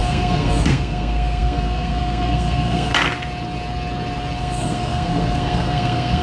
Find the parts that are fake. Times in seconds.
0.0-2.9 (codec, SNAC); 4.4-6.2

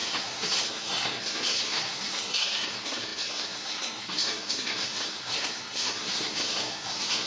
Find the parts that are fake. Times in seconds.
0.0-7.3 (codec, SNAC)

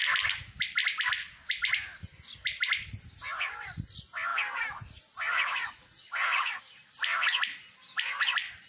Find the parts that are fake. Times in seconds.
none